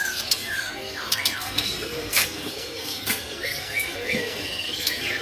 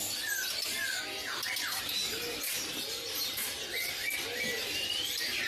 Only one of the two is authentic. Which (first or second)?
second